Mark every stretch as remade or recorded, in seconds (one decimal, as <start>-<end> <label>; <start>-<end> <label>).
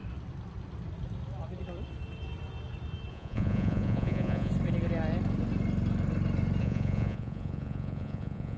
0.0-3.1 recorded; 3.1-4.5 remade; 4.5-6.6 recorded; 6.6-8.6 remade